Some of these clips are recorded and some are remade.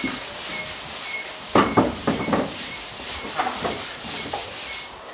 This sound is remade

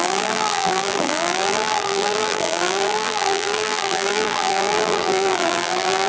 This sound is remade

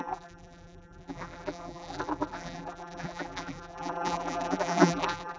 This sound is remade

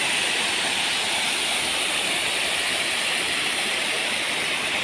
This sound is recorded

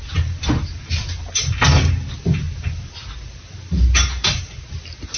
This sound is recorded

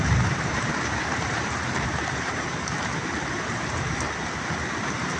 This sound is remade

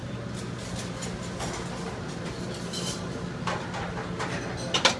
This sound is recorded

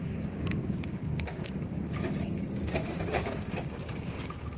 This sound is remade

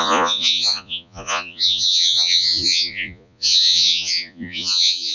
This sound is remade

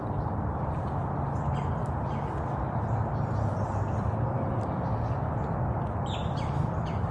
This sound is recorded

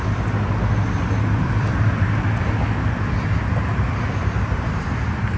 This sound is recorded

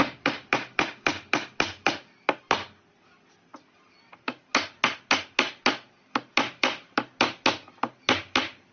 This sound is recorded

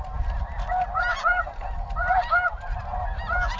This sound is recorded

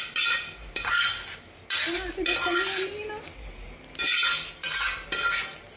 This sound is recorded